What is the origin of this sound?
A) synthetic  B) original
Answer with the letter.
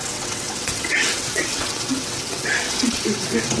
A